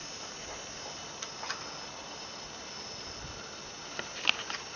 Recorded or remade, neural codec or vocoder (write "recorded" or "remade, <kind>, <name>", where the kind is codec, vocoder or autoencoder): recorded